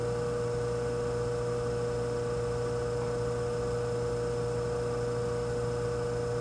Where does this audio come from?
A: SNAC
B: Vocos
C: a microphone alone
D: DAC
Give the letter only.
C